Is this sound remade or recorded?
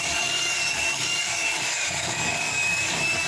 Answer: remade